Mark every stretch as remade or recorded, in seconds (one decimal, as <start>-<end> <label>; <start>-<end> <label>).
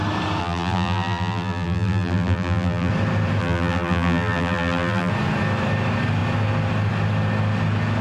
0.0-0.4 recorded; 0.4-2.9 remade; 2.9-3.4 recorded; 3.4-5.1 remade; 5.1-8.0 recorded